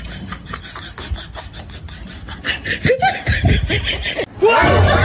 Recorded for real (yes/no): yes